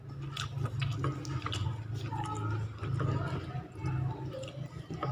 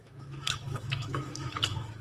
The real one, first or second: first